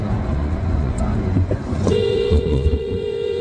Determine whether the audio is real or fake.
fake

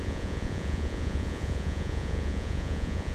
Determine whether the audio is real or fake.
fake